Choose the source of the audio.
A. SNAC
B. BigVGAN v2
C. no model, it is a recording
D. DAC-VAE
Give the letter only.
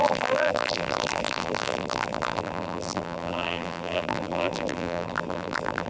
B